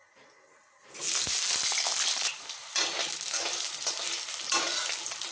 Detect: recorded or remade recorded